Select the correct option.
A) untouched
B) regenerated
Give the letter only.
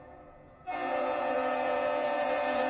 B